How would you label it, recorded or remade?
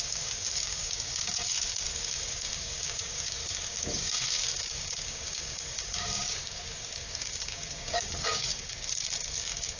remade